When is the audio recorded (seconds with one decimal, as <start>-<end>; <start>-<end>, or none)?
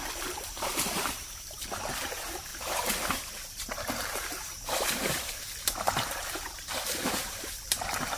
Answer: none